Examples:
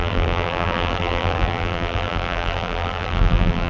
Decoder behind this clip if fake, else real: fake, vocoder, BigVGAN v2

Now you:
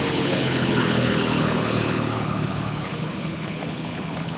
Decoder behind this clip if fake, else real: fake, codec, HILCodec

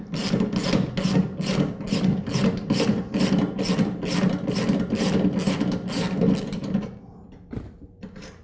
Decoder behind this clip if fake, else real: real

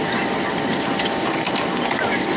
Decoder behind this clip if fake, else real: real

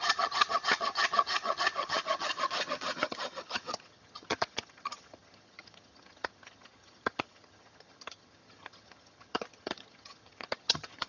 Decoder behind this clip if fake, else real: fake, vocoder, HiFi-GAN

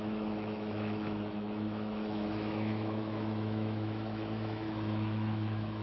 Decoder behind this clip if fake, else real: fake, autoencoder, DAC-VAE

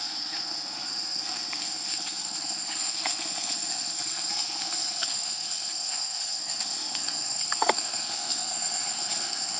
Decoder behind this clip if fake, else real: fake, codec, SNAC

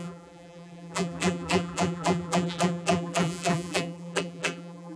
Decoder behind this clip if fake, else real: fake, vocoder, BigVGAN v2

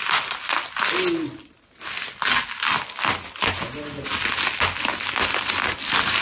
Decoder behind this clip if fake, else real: real